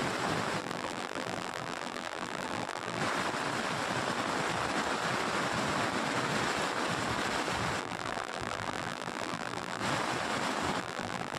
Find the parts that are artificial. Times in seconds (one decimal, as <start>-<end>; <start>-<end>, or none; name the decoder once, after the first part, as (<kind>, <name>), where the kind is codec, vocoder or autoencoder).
0.6-3.0 (vocoder, BigVGAN v2); 7.8-9.8; 10.8-11.4